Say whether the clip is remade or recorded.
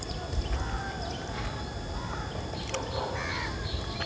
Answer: recorded